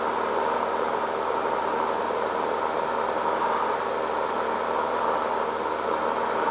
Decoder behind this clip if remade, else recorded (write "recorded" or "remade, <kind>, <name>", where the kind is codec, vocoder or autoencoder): recorded